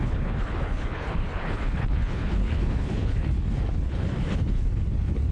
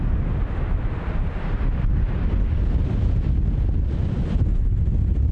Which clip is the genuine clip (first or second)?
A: second